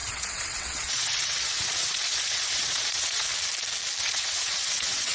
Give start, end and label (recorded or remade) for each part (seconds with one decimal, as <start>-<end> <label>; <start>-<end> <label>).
0.0-3.3 remade; 3.3-4.0 recorded; 4.0-5.1 remade